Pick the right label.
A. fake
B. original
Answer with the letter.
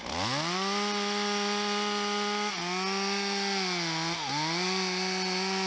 B